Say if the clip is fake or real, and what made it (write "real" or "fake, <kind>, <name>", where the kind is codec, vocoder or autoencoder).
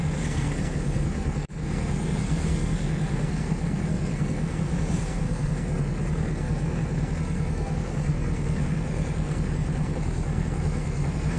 fake, codec, SNAC